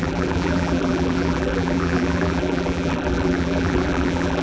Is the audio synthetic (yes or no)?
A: yes